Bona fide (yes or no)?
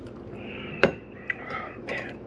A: no